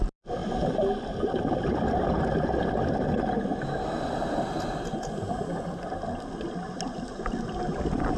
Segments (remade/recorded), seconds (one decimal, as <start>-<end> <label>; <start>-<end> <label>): 0.0-8.2 recorded